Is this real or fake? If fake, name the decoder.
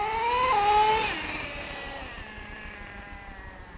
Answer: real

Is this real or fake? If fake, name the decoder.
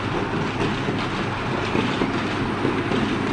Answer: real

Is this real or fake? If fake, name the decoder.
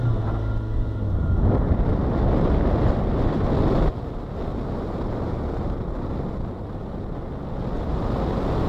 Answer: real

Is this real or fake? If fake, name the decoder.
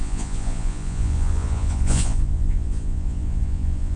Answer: fake, vocoder, Vocos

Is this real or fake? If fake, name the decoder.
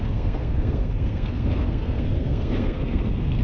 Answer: fake, codec, SNAC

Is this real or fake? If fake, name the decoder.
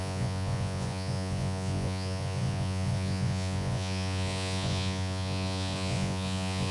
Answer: fake, vocoder, Vocos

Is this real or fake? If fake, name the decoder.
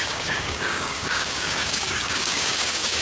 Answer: fake, codec, DAC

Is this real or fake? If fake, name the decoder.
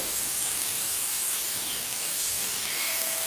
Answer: fake, codec, DAC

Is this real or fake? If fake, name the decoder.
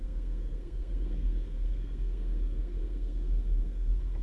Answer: fake, codec, SNAC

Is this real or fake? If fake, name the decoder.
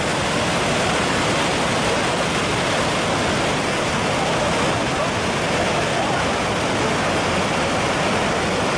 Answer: real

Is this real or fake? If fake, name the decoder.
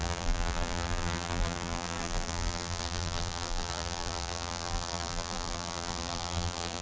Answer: fake, vocoder, BigVGAN v2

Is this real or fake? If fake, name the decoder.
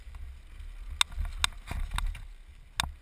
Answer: real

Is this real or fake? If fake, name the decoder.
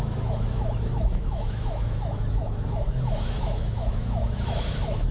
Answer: fake, autoencoder, DAC-VAE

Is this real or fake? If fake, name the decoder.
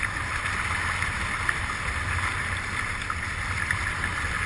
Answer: real